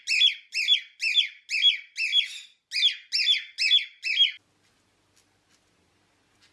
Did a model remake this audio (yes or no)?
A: no